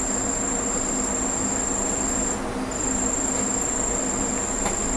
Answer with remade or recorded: recorded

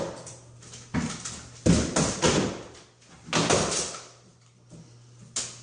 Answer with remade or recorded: recorded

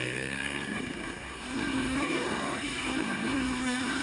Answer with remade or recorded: remade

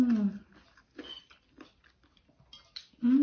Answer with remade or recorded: recorded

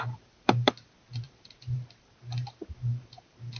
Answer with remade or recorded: remade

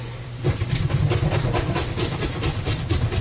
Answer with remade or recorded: remade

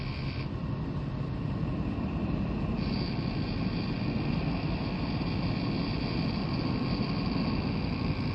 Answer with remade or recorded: recorded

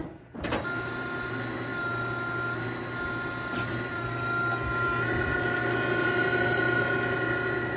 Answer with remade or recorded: recorded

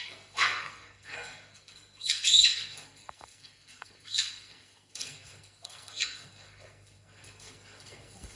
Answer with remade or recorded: remade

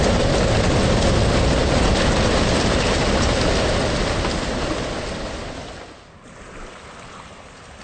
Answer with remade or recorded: recorded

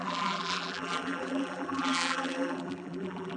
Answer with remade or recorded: remade